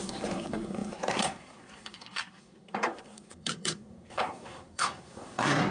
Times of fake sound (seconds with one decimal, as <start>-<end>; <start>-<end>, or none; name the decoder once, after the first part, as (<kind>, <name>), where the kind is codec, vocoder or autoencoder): 0.0-5.7 (codec, SNAC)

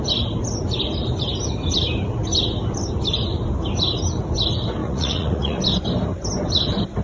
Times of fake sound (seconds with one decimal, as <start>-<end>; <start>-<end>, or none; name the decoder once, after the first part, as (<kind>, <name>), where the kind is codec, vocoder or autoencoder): 4.8-5.6 (vocoder, Vocos)

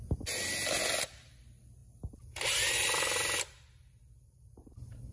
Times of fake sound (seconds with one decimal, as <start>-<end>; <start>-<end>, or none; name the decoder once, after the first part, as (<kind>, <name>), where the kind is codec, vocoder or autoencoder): none

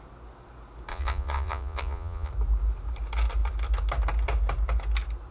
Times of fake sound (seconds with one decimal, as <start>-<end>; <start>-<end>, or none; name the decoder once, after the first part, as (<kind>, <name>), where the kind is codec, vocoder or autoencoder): 0.9-2.3 (vocoder, Vocos)

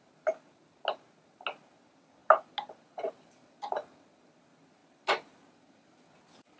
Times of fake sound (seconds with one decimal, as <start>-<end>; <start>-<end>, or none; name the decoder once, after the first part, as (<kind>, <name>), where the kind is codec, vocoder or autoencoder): none